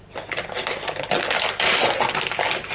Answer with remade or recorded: recorded